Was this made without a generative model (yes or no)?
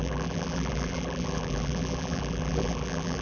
no